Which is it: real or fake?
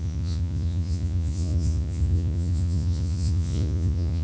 fake